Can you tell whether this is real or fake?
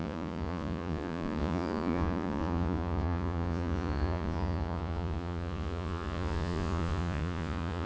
fake